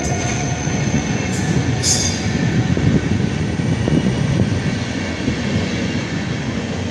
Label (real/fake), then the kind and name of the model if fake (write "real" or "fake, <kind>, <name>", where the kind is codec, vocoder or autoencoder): fake, vocoder, Vocos